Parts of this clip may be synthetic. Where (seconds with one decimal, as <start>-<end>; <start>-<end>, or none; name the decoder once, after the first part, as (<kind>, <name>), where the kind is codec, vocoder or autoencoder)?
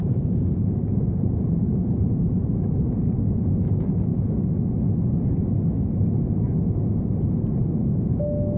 0.0-1.6 (vocoder, BigVGAN v2); 2.0-3.5